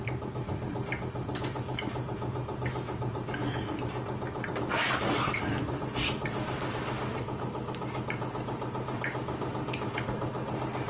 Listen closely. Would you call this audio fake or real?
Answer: real